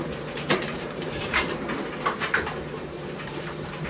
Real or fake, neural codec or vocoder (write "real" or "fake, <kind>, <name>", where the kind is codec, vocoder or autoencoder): fake, vocoder, BigVGAN v2